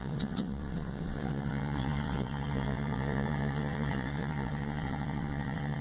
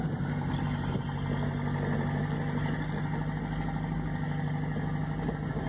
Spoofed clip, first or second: first